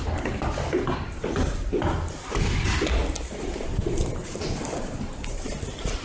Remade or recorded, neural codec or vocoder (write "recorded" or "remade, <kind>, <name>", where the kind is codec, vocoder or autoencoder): recorded